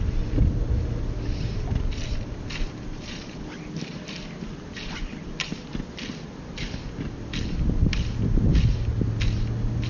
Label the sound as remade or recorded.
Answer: recorded